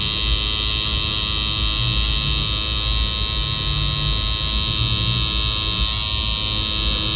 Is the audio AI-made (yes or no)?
no